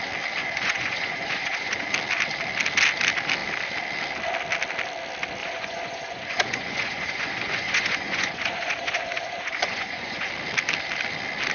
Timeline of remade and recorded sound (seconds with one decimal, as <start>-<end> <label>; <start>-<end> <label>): 0.0-0.4 recorded; 0.4-1.9 remade; 1.9-5.4 recorded; 5.4-10.3 remade; 10.3-11.5 recorded